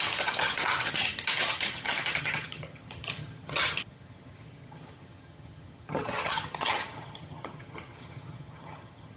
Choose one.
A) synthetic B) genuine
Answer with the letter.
A